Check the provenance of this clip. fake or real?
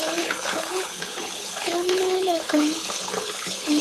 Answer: fake